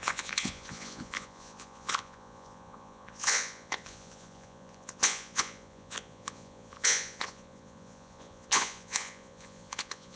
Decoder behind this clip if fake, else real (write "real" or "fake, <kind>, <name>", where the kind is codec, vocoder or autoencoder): fake, vocoder, Vocos